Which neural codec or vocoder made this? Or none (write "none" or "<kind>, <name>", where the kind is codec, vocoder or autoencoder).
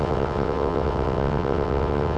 vocoder, WaveNeXt